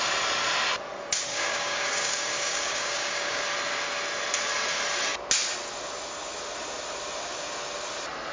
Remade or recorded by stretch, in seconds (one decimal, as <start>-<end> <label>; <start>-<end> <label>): 0.0-1.3 recorded; 1.3-3.4 remade; 3.4-8.3 recorded